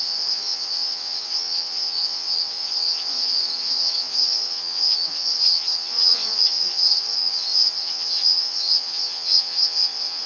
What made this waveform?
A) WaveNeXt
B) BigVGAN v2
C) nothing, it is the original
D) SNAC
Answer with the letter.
A